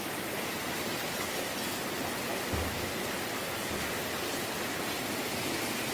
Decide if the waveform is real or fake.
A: real